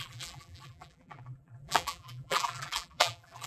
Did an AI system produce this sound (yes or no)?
yes